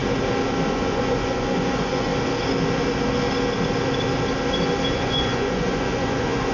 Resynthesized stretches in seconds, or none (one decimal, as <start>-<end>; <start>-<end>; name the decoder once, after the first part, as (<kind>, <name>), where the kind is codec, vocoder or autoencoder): 0.7-2.1 (vocoder, Vocos); 4.9-6.5